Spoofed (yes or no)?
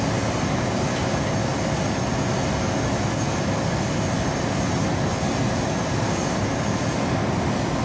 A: no